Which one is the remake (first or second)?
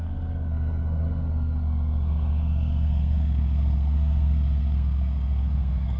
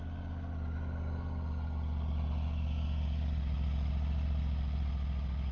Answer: first